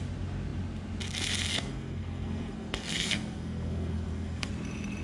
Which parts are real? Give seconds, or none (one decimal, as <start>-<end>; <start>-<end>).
0.0-1.5; 4.5-5.0